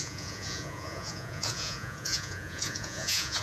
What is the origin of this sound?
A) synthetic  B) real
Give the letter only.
A